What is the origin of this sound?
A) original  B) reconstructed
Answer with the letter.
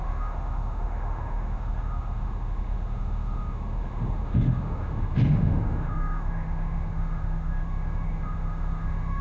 B